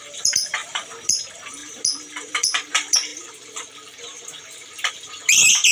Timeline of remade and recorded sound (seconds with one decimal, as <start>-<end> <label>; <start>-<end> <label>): 0.0-0.6 remade; 0.6-1.1 recorded; 1.1-1.6 remade; 1.6-2.3 recorded; 2.3-5.7 remade